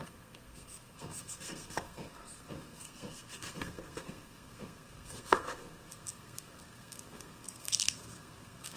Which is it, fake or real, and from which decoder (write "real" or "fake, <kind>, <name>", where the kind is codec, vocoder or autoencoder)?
fake, codec, SNAC